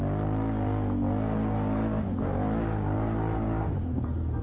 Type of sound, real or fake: real